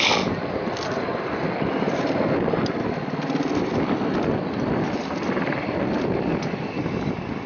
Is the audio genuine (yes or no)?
yes